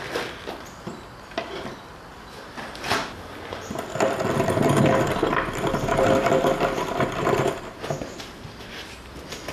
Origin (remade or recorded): remade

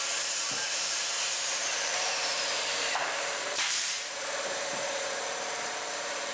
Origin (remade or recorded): remade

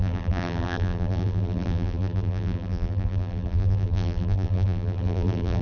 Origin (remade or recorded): remade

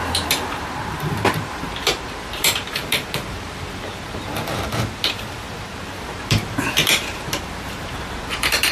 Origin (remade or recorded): remade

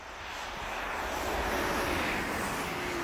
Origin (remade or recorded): recorded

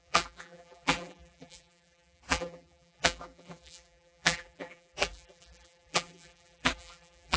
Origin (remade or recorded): remade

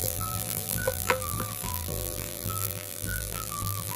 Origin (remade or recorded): remade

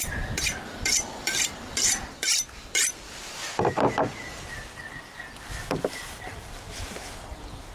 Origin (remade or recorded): remade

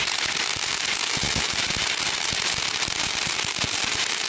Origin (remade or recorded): remade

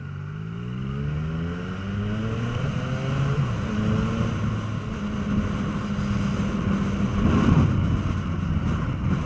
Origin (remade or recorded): recorded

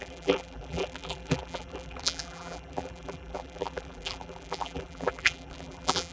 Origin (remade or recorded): remade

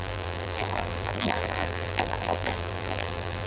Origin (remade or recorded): remade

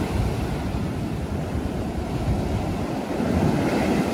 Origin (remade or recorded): recorded